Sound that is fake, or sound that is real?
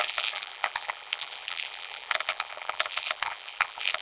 fake